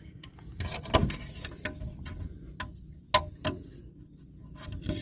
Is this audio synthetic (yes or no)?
no